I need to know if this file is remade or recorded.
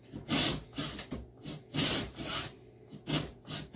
recorded